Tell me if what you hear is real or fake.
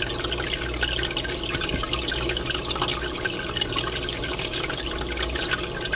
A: real